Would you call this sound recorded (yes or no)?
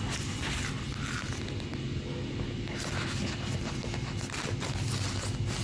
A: yes